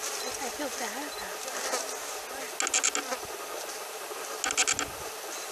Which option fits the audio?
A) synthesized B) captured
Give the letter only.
B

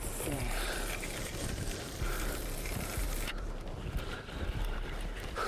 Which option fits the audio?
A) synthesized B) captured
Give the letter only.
A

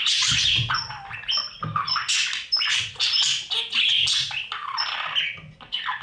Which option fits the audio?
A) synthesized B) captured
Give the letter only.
B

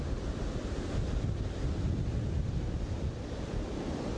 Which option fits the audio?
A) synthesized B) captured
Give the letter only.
B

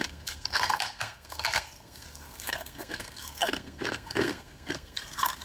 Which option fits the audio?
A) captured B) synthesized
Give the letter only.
B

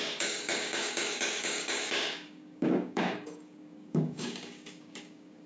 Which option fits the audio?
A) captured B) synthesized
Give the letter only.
B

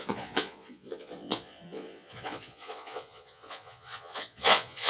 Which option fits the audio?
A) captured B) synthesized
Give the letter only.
B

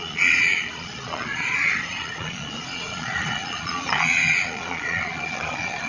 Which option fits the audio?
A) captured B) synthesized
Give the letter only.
B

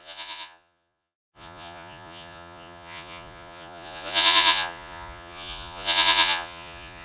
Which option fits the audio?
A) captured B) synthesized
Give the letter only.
B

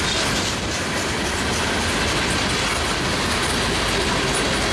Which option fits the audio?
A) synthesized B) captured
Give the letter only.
B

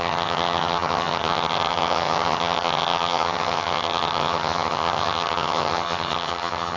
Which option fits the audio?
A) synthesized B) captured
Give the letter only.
A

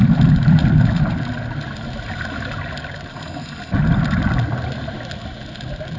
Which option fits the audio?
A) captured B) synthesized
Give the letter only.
A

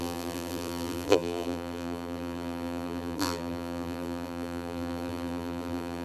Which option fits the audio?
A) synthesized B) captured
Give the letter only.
A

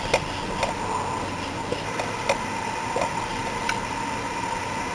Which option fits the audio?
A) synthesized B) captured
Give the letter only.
B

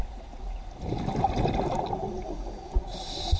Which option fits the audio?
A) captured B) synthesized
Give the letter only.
A